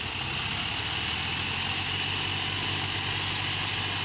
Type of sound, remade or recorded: recorded